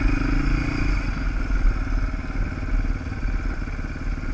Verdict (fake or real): real